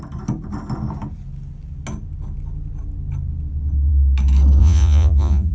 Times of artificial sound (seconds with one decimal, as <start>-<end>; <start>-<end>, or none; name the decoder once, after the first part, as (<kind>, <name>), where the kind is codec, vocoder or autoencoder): 4.6-5.5 (vocoder, Vocos)